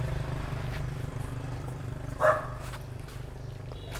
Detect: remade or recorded recorded